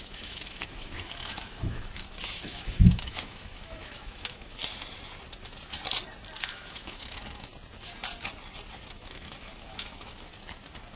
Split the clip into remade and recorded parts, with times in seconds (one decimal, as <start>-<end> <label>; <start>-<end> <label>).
0.0-4.6 remade; 4.6-6.4 recorded; 6.4-7.5 remade; 7.5-8.9 recorded; 8.9-10.3 remade; 10.3-11.0 recorded